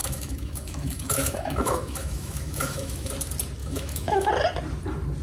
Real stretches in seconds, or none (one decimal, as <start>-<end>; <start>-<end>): 3.1-3.6; 4.3-5.2